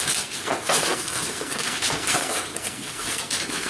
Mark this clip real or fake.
fake